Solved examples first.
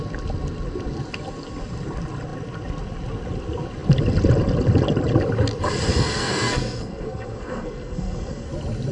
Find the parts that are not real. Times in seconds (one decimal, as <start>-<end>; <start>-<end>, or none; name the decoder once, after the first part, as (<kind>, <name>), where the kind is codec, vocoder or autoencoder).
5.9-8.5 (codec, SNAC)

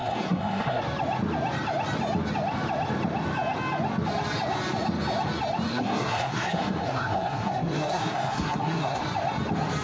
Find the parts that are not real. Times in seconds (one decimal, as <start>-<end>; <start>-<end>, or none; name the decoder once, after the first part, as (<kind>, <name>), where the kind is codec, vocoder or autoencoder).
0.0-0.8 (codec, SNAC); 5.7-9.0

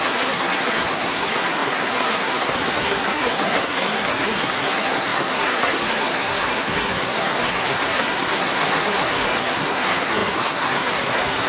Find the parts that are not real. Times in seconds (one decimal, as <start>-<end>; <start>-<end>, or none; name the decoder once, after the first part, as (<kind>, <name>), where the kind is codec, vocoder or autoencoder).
0.0-11.5 (codec, SNAC)

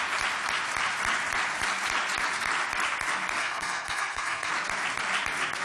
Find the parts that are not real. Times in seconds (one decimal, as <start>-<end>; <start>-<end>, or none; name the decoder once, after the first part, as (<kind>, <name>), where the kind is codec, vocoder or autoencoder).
3.4-4.5 (codec, SNAC)

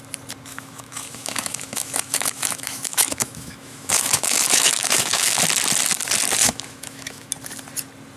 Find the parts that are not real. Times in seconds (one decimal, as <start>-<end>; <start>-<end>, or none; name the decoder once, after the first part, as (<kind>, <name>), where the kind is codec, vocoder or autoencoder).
0.5-5.4 (autoencoder, DAC-VAE); 6.4-7.3

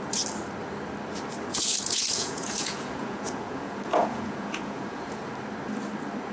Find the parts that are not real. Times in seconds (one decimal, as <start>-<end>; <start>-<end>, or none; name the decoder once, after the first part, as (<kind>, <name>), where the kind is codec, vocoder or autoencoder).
1.5-5.3 (vocoder, Vocos)

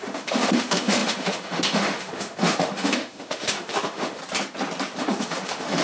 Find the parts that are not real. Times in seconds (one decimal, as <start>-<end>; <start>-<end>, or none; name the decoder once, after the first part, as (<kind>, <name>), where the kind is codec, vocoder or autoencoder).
0.0-4.2 (autoencoder, DAC-VAE); 5.0-5.8